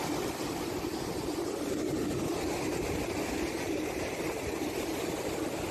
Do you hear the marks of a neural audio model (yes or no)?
no